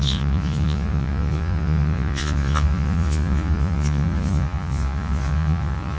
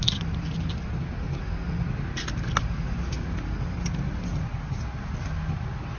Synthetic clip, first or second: first